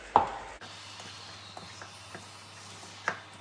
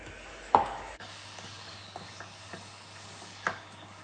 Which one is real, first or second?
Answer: first